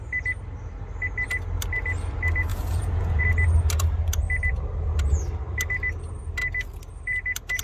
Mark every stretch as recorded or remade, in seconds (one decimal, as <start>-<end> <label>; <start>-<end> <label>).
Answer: 0.0-2.5 recorded; 2.5-3.2 remade; 3.2-7.6 recorded